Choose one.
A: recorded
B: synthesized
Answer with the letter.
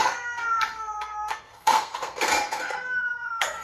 B